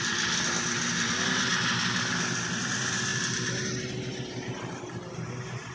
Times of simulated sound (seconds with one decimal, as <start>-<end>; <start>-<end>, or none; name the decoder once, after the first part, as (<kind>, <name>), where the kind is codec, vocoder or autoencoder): none